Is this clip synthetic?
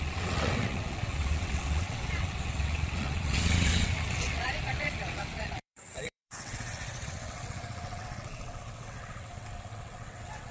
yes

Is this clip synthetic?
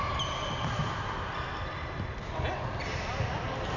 no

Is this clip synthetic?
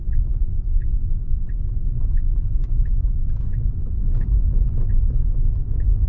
yes